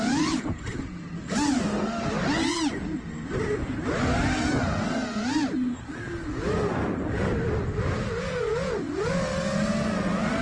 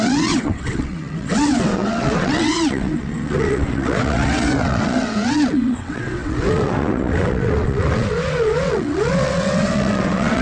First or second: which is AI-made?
second